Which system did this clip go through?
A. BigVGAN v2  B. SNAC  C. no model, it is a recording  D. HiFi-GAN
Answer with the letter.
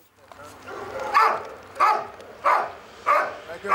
C